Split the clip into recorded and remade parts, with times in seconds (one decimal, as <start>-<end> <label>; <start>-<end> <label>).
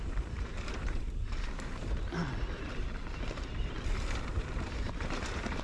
0.0-2.2 remade; 2.2-3.6 recorded; 3.6-5.6 remade